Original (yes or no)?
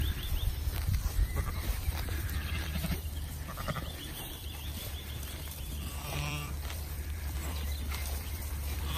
no